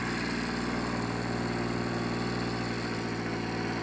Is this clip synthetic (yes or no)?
no